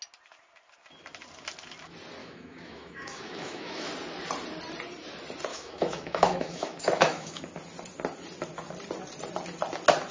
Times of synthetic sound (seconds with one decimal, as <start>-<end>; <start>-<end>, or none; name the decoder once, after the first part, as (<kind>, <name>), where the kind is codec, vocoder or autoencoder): 2.2-3.9 (autoencoder, DAC-VAE); 5.5-7.4